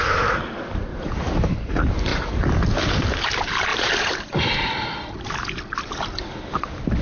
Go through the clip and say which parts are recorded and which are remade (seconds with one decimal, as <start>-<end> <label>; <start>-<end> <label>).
0.0-0.9 recorded; 0.9-1.5 remade; 1.5-3.7 recorded; 3.7-4.4 remade; 4.4-7.0 recorded